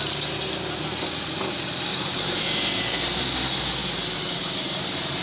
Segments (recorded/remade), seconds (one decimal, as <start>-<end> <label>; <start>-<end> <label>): 0.0-1.9 recorded; 1.9-3.4 remade; 3.4-3.8 recorded; 3.8-5.2 remade